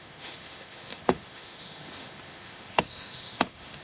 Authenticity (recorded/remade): remade